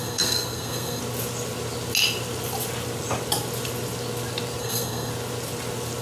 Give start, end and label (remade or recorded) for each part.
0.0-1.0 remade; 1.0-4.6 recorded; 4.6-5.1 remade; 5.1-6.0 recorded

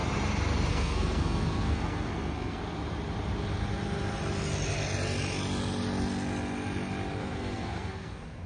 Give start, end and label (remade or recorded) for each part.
0.0-0.7 recorded; 0.7-2.6 remade; 2.6-7.2 recorded; 7.2-8.5 remade

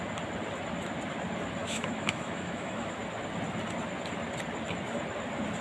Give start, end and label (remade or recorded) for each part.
0.0-1.6 recorded; 1.6-3.0 remade; 3.0-5.6 recorded

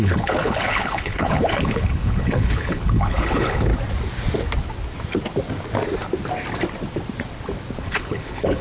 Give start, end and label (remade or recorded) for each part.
0.0-3.7 remade; 3.7-7.8 recorded; 7.8-8.6 remade

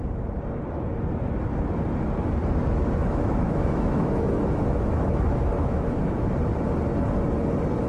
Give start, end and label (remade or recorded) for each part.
0.0-3.0 recorded; 3.0-6.3 remade; 6.3-7.9 recorded

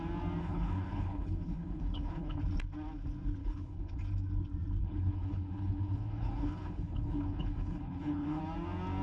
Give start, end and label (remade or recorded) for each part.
0.0-0.4 recorded; 0.4-2.4 remade; 2.4-3.4 recorded; 3.4-4.0 remade; 4.0-4.8 recorded; 4.8-8.4 remade; 8.4-9.0 recorded